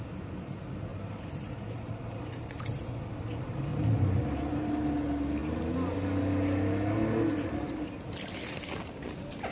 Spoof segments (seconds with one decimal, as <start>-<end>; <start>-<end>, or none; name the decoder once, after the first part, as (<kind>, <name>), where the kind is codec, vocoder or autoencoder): 0.9-2.8 (vocoder, BigVGAN v2); 3.7-4.9